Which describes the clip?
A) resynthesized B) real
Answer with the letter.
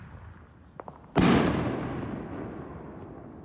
B